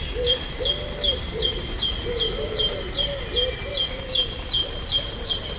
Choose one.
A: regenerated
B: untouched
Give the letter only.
B